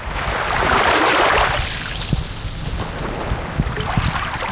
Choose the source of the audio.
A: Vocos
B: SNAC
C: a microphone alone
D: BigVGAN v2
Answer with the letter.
C